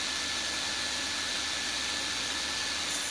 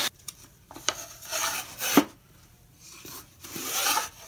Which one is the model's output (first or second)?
second